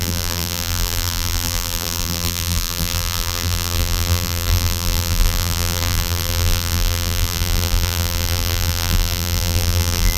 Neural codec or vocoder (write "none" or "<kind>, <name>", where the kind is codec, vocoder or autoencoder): vocoder, BigVGAN v2